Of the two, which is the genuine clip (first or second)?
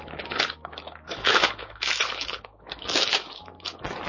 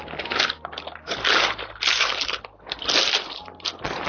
second